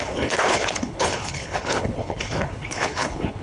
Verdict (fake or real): fake